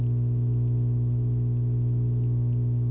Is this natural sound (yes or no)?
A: yes